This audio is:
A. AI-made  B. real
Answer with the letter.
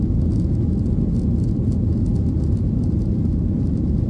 B